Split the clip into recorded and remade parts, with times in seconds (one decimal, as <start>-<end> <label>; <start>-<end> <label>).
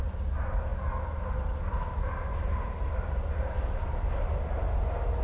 0.0-5.2 recorded